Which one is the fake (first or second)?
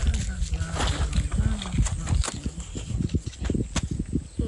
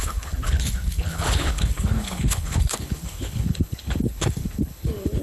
second